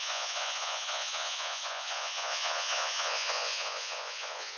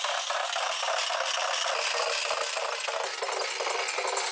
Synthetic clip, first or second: first